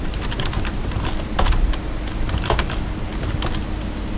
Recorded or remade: recorded